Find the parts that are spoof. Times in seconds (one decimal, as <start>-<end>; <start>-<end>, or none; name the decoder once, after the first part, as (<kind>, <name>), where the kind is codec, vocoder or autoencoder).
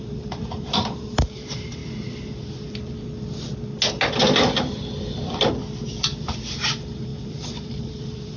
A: 0.0-1.8 (vocoder, BigVGAN v2); 6.6-8.4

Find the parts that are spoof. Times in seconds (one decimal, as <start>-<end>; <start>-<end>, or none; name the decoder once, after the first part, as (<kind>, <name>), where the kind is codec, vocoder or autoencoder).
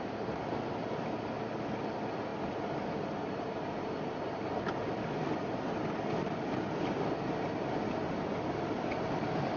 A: none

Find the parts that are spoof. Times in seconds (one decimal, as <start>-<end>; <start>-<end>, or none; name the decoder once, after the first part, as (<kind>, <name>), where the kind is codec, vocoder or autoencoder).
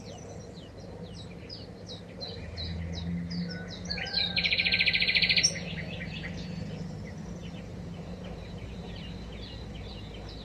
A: 7.4-9.9 (vocoder, BigVGAN v2)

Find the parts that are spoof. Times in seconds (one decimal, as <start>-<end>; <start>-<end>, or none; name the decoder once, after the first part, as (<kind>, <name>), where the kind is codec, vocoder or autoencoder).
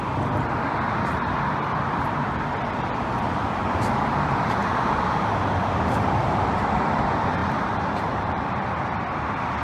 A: 4.6-7.0 (vocoder, BigVGAN v2); 7.4-8.4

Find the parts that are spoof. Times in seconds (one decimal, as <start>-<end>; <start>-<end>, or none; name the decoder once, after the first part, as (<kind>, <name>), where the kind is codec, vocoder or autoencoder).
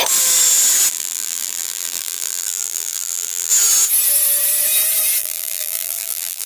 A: 0.9-3.5 (vocoder, BigVGAN v2); 5.2-6.5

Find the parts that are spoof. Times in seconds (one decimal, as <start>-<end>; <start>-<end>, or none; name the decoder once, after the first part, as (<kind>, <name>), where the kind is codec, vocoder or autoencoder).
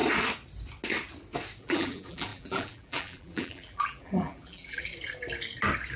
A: 1.6-4.9 (vocoder, BigVGAN v2)